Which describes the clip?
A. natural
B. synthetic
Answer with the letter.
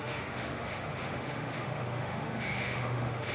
B